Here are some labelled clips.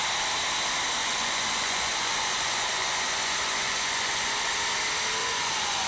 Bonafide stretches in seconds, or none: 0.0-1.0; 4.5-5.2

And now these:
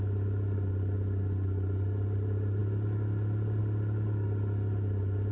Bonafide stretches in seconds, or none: 0.0-5.3

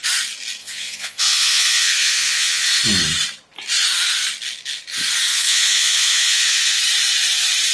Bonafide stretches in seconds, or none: 0.0-0.6; 2.8-5.3; 6.8-7.7